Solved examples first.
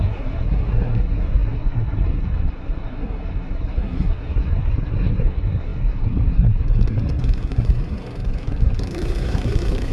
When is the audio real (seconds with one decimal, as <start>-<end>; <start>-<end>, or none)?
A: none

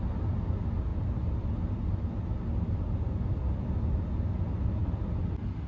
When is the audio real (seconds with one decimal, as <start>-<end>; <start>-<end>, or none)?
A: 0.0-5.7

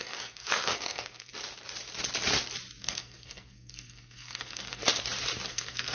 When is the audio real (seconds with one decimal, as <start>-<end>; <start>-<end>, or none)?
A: 1.3-2.8; 4.8-5.5

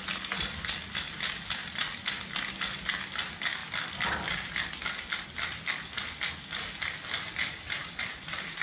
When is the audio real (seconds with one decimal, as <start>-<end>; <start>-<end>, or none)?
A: 0.0-8.6